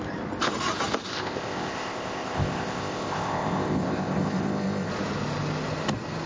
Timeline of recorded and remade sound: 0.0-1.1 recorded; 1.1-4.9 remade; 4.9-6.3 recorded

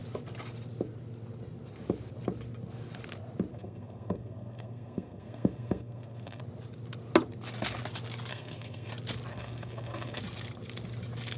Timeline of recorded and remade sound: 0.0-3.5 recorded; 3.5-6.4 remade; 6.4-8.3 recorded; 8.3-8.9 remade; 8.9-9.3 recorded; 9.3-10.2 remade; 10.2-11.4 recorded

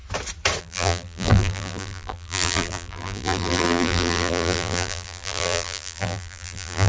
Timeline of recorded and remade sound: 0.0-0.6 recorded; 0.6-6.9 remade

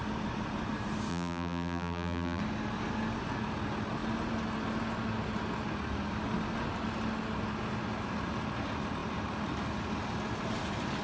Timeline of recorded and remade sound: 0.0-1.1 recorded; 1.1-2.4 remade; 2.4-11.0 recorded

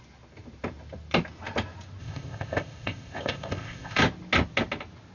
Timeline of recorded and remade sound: 0.0-2.0 recorded; 2.0-4.0 remade; 4.0-5.1 recorded

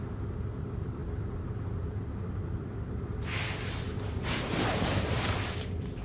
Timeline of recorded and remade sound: 0.0-6.0 recorded